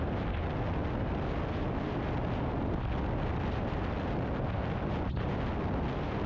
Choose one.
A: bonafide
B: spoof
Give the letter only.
A